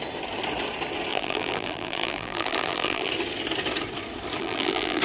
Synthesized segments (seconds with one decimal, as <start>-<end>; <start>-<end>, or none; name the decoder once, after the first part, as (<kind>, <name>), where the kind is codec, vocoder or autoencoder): 1.1-3.1 (vocoder, BigVGAN v2); 4.4-5.0